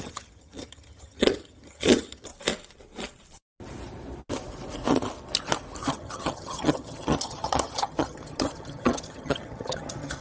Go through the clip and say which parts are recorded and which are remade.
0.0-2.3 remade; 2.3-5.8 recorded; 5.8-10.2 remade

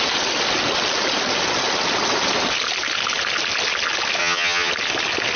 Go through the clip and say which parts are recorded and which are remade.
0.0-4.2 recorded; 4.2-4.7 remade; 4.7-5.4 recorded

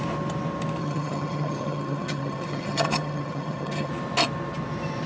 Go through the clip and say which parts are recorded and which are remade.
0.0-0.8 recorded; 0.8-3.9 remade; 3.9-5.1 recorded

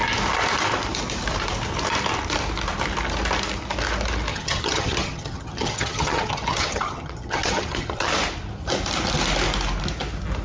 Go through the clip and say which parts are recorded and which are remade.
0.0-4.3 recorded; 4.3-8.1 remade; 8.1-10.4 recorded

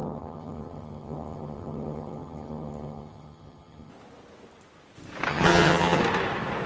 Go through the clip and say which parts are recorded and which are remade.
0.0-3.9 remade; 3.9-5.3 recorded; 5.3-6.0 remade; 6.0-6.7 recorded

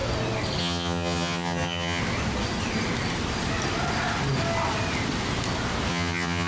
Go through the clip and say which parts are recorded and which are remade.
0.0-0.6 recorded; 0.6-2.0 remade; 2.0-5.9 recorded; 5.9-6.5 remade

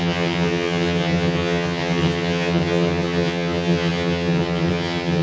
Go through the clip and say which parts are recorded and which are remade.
0.0-5.2 remade